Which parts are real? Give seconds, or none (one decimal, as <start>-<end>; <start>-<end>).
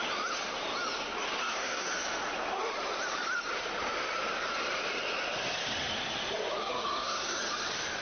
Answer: 0.0-1.4; 1.9-6.6; 7.4-8.0